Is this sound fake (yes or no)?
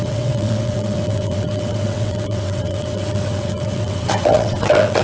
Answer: yes